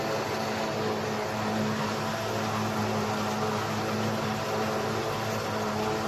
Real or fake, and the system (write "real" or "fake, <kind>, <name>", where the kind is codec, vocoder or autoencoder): real